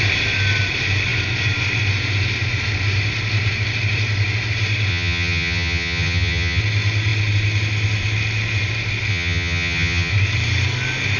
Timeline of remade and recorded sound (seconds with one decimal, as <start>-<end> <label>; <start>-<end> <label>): 0.0-4.9 recorded; 4.9-6.6 remade; 6.6-9.1 recorded; 9.1-10.1 remade; 10.1-11.2 recorded